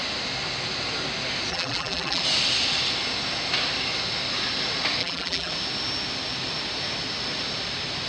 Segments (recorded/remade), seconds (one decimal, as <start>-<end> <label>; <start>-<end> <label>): 0.0-1.5 recorded; 1.5-2.2 remade; 2.2-5.0 recorded; 5.0-5.5 remade; 5.5-8.1 recorded